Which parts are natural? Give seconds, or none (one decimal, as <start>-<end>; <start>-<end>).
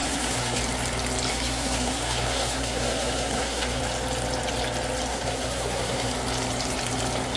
0.6-1.3; 3.8-5.1; 6.1-7.4